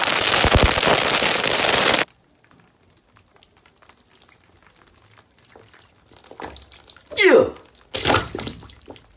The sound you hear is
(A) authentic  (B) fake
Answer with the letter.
A